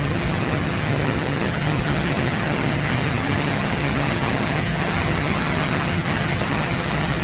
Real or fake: fake